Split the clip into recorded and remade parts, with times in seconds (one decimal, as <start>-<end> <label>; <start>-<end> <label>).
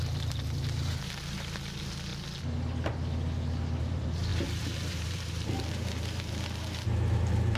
0.0-2.1 remade; 2.1-3.8 recorded; 3.8-7.6 remade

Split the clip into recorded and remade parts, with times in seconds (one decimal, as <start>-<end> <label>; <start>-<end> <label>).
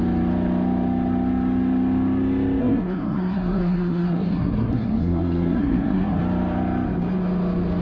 0.0-2.6 recorded; 2.6-6.2 remade; 6.2-7.8 recorded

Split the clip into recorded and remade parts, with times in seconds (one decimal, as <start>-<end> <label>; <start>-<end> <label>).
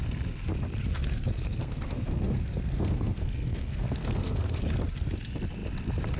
0.0-0.9 recorded; 0.9-4.6 remade; 4.6-6.2 recorded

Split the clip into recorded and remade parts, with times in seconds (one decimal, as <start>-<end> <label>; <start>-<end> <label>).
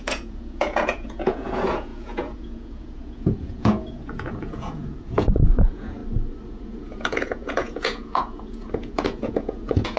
0.0-6.0 remade; 6.0-6.5 recorded; 6.5-10.0 remade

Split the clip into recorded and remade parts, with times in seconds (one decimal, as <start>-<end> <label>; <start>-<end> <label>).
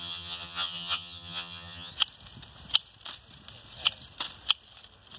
0.0-1.9 remade; 1.9-5.2 recorded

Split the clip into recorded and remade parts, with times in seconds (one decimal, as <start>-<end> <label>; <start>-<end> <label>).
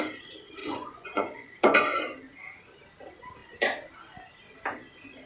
0.0-0.6 recorded; 0.6-2.0 remade; 2.0-5.3 recorded